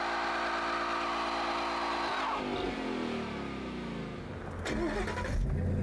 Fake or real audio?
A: real